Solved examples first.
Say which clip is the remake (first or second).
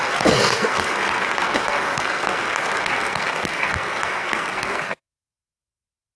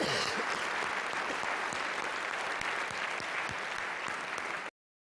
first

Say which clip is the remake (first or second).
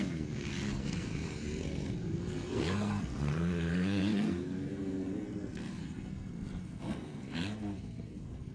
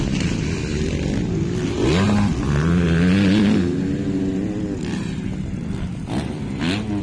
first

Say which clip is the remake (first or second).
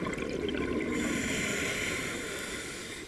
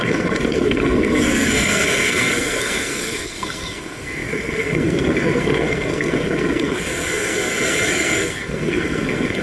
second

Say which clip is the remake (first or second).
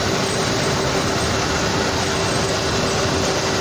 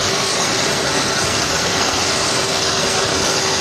second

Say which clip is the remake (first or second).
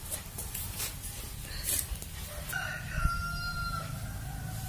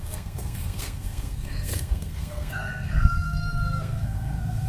second